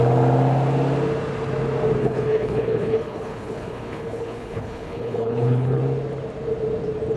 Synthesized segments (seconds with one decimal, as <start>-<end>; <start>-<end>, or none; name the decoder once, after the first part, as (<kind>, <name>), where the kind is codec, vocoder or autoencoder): 2.0-5.8 (codec, HILCodec)